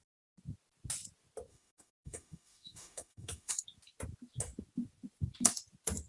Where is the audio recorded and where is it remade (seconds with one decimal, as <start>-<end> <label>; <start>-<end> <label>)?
0.0-1.5 recorded; 1.5-3.5 remade; 3.5-6.1 recorded